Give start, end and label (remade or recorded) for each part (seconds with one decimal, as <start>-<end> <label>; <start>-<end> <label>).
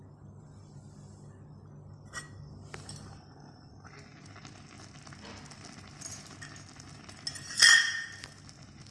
0.0-8.9 recorded